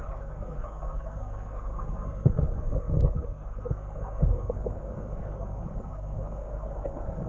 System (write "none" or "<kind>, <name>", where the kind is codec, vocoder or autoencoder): codec, SNAC